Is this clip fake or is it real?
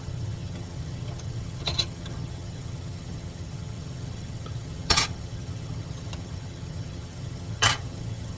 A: fake